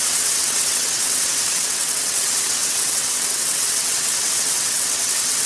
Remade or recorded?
remade